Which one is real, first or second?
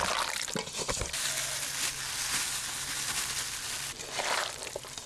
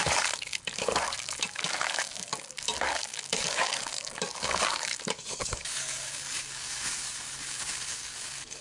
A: first